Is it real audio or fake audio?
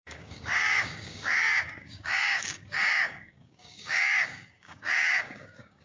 fake